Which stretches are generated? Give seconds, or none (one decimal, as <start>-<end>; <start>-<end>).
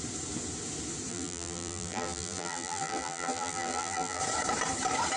1.1-4.2